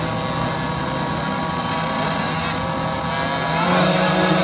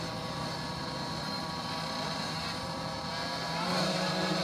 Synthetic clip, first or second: second